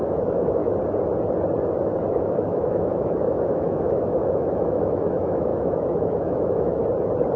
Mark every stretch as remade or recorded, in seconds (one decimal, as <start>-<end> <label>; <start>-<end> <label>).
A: 0.0-0.6 remade; 0.6-2.1 recorded; 2.1-6.8 remade; 6.8-7.4 recorded